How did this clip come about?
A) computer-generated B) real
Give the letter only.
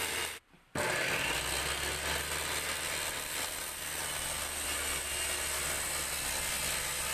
B